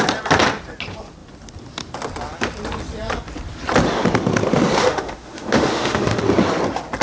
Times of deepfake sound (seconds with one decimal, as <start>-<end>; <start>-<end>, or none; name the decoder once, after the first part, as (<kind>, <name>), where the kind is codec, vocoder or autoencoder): 4.8-6.2 (autoencoder, DAC-VAE)